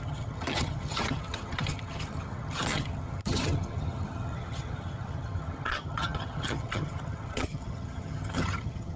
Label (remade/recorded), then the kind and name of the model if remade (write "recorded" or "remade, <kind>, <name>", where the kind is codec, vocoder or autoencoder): remade, vocoder, HiFi-GAN